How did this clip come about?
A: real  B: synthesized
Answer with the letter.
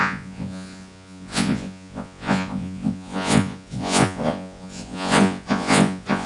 B